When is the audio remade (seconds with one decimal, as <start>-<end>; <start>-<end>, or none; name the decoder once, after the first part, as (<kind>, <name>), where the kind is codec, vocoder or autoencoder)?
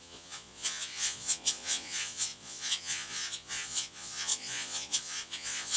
0.0-5.8 (vocoder, Vocos)